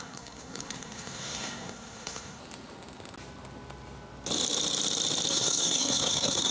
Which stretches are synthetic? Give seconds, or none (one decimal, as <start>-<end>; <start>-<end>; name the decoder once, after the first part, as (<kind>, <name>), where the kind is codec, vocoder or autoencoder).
0.0-2.4 (codec, SNAC); 5.3-6.5